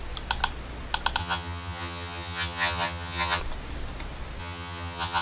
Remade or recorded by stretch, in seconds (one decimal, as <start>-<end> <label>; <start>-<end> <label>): 0.0-1.2 recorded; 1.2-3.4 remade; 3.4-4.4 recorded; 4.4-5.2 remade